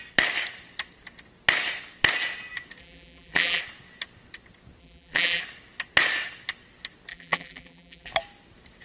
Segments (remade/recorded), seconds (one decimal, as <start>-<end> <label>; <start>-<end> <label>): 0.0-2.8 recorded; 2.8-3.6 remade; 3.6-4.8 recorded; 4.8-5.4 remade; 5.4-7.1 recorded; 7.1-8.1 remade; 8.1-8.8 recorded